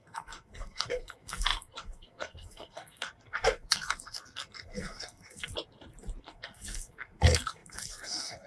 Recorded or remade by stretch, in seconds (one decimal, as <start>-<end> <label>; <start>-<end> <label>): 0.0-5.5 remade; 5.5-6.2 recorded; 6.2-8.5 remade